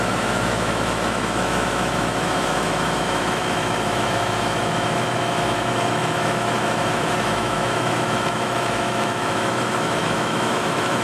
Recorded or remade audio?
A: remade